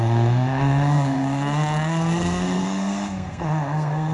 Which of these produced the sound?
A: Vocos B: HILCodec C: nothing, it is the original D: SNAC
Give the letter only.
D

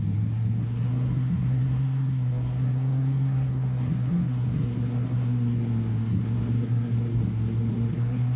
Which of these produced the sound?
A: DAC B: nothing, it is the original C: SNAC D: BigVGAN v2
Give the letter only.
C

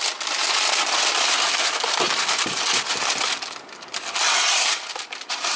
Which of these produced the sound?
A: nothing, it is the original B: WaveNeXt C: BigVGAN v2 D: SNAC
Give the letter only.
A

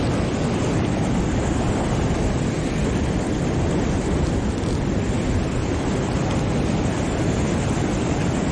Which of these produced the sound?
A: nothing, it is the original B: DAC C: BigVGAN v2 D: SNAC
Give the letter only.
A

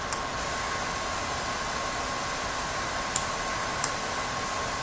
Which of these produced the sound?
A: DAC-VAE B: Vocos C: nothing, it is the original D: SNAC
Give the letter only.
C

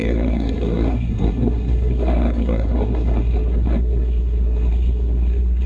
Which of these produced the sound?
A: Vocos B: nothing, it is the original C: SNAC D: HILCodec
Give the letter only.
C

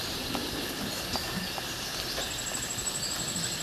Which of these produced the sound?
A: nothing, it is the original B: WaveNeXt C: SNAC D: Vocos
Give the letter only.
A